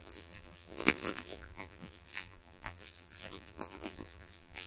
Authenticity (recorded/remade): remade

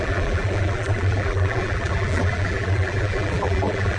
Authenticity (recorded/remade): remade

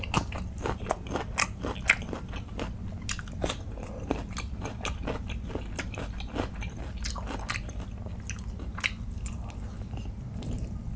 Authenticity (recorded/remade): recorded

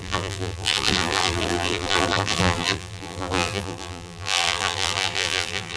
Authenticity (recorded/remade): remade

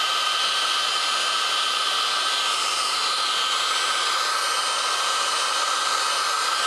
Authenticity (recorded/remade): recorded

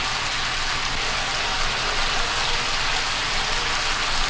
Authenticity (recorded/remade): recorded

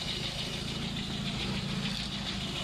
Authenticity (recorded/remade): recorded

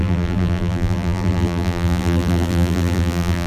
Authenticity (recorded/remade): remade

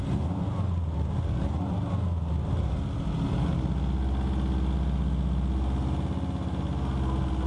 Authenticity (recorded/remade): recorded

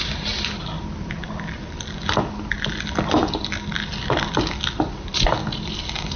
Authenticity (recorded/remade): recorded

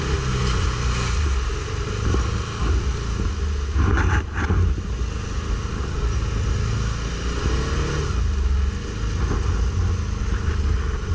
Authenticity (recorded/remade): recorded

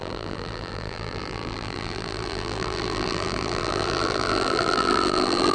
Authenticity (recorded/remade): remade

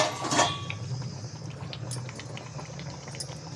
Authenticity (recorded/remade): recorded